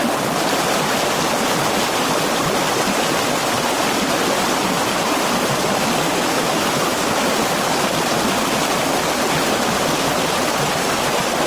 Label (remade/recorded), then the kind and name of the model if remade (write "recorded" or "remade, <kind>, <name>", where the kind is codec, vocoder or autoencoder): recorded